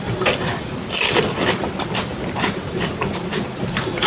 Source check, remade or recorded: recorded